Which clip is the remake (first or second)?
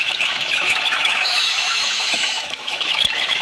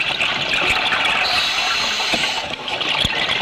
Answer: first